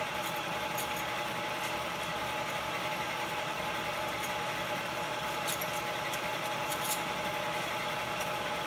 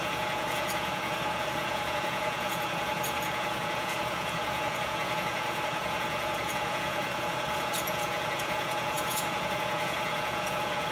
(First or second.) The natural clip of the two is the first